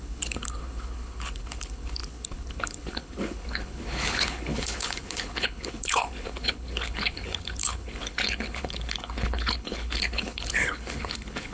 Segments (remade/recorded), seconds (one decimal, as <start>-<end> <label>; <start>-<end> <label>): 0.0-11.5 remade